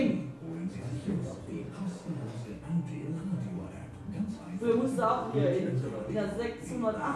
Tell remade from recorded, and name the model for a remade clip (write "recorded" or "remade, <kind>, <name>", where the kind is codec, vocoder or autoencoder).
recorded